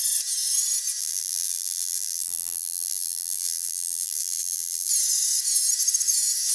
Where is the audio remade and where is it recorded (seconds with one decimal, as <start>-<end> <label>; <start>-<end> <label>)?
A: 0.0-1.0 recorded; 1.0-4.9 remade; 4.9-6.5 recorded